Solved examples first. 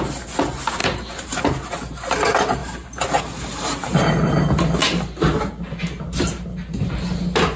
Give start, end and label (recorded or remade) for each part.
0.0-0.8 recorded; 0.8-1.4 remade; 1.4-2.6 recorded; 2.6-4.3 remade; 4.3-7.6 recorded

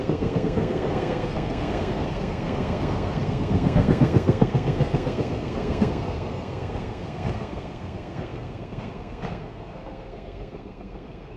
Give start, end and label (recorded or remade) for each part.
0.0-11.4 remade

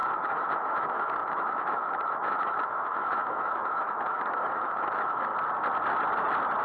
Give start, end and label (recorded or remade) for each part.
0.0-5.3 remade; 5.3-6.6 recorded